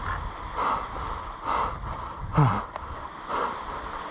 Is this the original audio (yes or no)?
yes